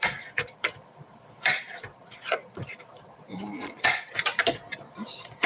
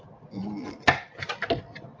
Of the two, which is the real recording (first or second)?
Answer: second